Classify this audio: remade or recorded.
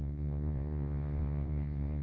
remade